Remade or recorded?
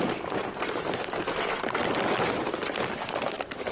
recorded